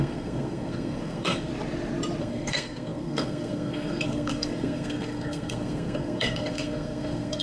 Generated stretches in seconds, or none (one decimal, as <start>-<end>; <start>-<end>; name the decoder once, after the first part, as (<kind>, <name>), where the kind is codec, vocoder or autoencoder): 0.0-1.5 (codec, SNAC); 2.2-7.4